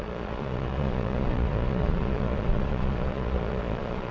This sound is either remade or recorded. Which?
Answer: remade